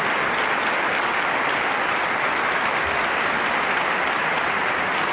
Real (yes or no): yes